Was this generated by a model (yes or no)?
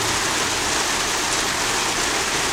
no